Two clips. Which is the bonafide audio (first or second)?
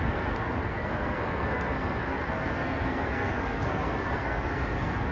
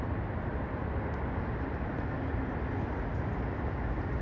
second